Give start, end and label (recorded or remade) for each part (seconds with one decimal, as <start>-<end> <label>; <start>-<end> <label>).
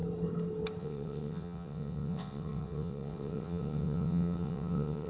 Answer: 0.0-0.8 recorded; 0.8-5.1 remade